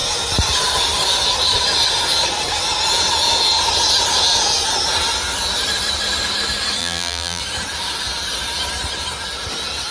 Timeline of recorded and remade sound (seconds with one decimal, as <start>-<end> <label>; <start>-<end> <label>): 0.0-6.8 recorded; 6.8-7.4 remade; 7.4-9.9 recorded